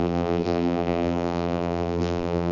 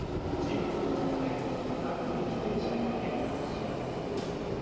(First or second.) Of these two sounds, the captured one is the second